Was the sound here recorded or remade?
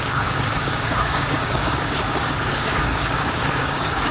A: remade